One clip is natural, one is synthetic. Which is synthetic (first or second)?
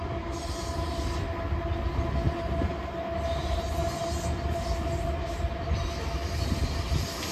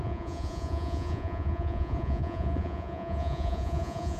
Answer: second